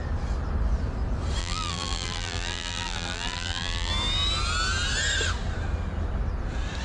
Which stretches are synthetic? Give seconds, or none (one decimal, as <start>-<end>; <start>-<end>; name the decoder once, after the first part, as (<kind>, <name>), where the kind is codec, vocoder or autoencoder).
1.4-3.9 (vocoder, BigVGAN v2)